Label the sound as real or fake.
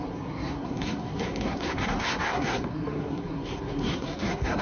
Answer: fake